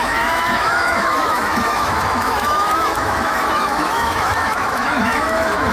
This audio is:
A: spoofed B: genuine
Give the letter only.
A